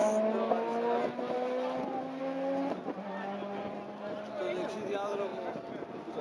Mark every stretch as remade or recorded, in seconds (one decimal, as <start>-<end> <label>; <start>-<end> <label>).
0.0-6.2 recorded